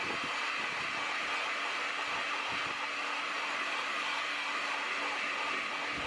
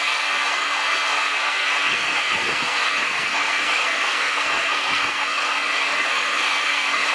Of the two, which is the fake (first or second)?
second